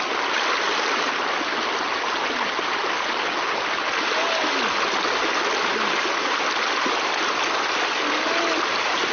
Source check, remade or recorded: recorded